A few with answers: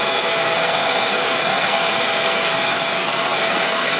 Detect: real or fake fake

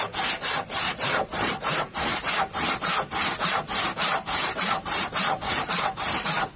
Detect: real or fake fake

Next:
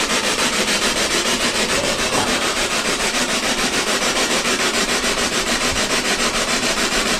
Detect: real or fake fake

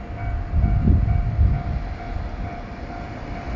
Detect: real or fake real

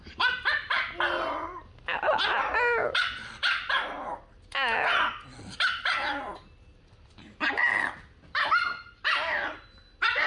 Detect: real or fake real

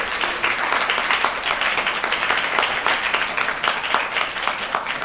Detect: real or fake real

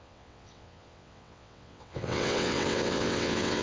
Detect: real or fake fake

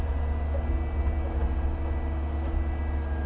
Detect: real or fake real